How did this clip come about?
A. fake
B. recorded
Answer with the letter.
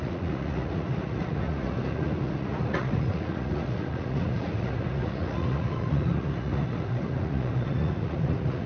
A